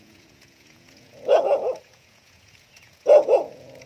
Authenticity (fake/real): fake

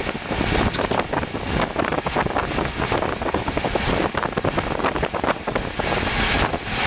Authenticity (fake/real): real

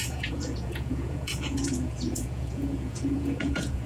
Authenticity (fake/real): fake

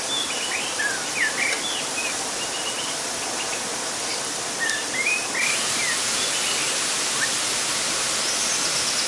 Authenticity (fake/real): real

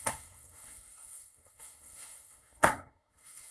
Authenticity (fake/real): fake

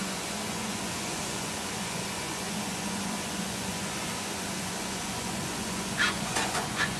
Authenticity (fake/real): fake